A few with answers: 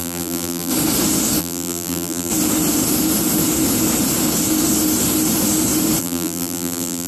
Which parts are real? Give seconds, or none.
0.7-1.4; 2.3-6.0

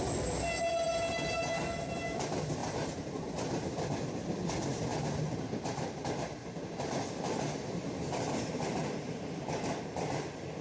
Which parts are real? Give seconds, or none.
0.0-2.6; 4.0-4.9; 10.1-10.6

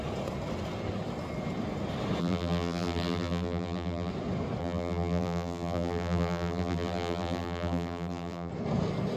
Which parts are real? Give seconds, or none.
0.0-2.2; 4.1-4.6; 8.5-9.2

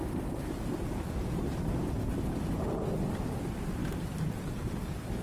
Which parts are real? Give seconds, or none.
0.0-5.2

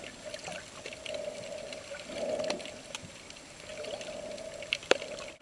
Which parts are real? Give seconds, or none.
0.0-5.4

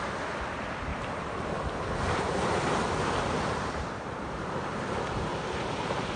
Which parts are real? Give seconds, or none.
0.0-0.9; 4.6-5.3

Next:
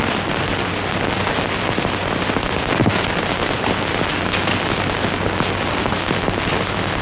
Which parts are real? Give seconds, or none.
0.0-2.0; 4.1-7.0

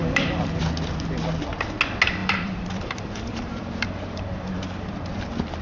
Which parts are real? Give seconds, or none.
0.6-2.2; 5.1-5.6